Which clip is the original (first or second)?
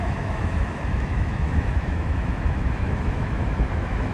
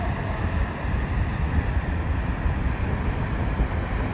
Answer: second